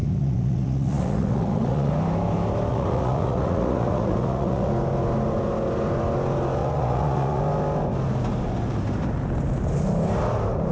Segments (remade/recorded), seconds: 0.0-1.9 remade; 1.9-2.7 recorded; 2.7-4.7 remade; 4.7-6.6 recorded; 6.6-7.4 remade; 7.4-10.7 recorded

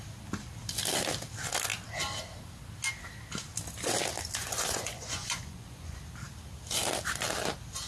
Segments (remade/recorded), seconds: 0.0-4.4 recorded; 4.4-6.0 remade; 6.0-7.9 recorded